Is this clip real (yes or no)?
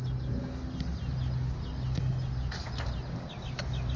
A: yes